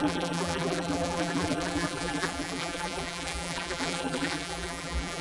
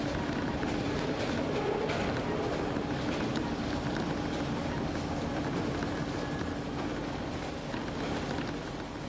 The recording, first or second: second